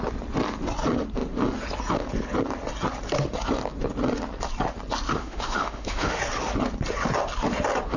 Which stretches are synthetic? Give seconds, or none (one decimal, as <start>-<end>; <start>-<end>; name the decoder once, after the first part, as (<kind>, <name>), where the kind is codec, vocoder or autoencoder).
5.1-6.2 (autoencoder, DAC-VAE)